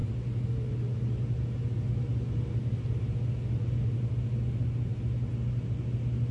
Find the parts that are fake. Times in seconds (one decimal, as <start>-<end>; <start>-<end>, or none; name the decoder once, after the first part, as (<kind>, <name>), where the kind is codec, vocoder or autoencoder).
none